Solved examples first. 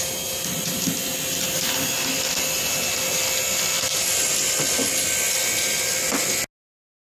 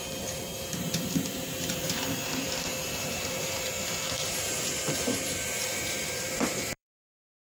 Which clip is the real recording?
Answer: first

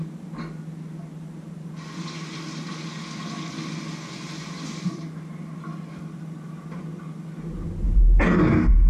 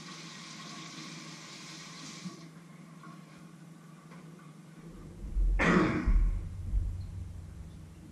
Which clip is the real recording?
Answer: first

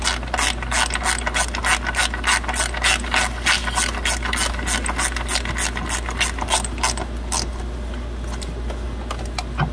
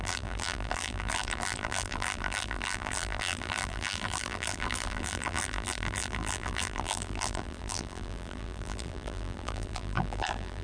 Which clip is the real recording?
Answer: first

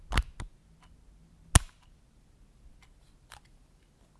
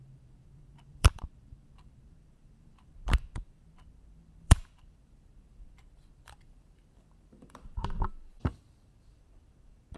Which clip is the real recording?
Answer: first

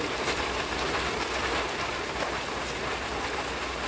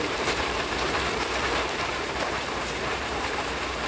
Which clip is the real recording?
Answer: first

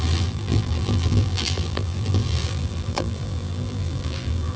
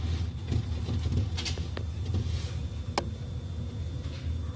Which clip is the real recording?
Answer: second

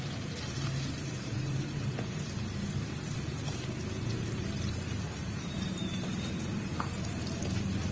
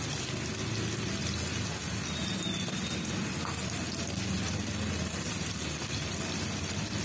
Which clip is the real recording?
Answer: second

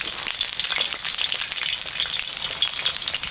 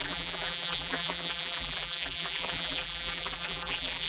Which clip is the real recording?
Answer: first